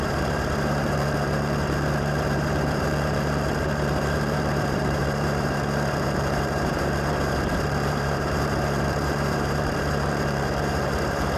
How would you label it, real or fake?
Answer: fake